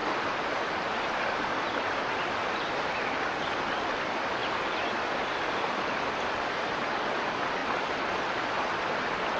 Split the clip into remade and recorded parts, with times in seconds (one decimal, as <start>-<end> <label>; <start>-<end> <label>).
0.0-7.6 remade; 7.6-8.2 recorded; 8.2-9.4 remade